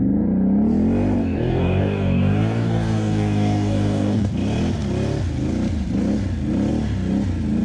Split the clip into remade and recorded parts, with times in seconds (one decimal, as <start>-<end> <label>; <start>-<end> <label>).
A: 0.0-1.2 recorded; 1.2-4.3 remade; 4.3-7.6 recorded